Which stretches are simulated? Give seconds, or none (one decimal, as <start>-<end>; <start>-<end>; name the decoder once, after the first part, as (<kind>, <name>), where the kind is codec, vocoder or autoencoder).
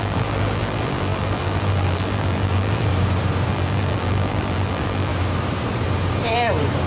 0.0-2.9 (vocoder, BigVGAN v2); 3.5-5.1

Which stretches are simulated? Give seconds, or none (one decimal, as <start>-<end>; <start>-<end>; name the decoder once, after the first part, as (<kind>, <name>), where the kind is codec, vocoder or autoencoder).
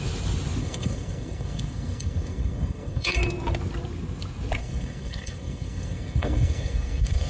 0.6-3.2 (codec, SNAC); 4.6-7.3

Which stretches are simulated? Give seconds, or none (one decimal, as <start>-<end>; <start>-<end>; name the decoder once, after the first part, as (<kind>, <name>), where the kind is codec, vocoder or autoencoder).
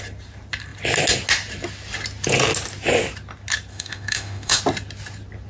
3.7-4.6 (autoencoder, DAC-VAE)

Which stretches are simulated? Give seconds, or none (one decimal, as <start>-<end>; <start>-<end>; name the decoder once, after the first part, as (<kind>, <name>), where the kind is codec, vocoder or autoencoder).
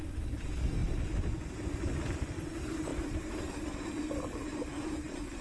none